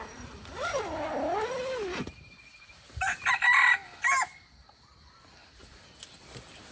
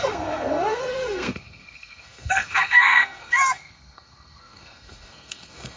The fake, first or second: second